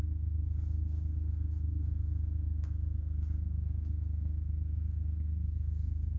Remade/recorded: remade